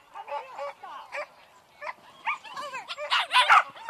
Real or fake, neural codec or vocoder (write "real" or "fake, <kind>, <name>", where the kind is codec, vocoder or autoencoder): real